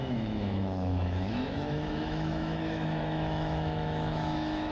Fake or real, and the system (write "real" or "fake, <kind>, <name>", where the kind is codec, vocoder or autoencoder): fake, autoencoder, DAC-VAE